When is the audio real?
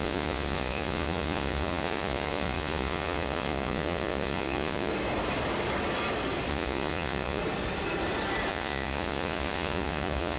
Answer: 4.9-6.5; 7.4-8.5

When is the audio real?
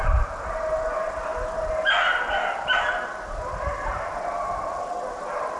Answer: 0.0-5.6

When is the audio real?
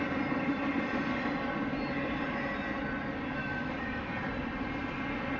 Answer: 0.0-3.4; 4.1-5.4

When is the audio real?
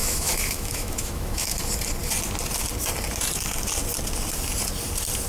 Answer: 1.6-5.3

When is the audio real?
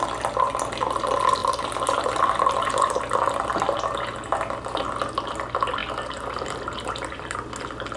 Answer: 0.0-1.4; 3.0-5.8; 7.5-8.0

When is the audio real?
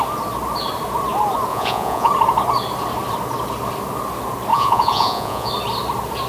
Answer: 0.0-1.5; 2.1-4.5; 5.5-6.3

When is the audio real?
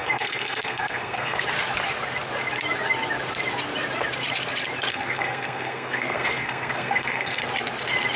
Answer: 1.4-4.9; 7.4-8.2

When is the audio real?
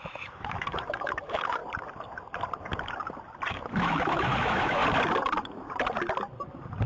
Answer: 1.6-3.5; 4.8-6.9